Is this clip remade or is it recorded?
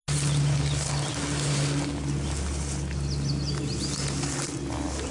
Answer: recorded